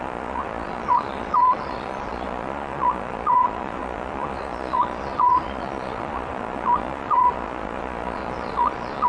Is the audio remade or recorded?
remade